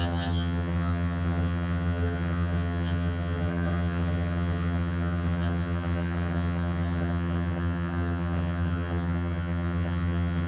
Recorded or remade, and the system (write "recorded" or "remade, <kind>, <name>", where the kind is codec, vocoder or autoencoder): remade, vocoder, HiFi-GAN